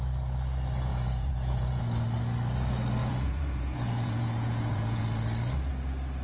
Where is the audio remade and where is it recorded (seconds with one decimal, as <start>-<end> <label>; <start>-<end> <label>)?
0.0-0.9 recorded; 0.9-1.8 remade; 1.8-3.0 recorded; 3.0-5.0 remade; 5.0-6.2 recorded